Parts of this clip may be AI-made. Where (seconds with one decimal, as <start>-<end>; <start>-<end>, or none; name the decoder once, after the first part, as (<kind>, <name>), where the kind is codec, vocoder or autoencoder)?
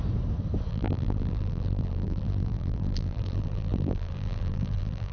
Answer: 0.7-5.1 (vocoder, BigVGAN v2)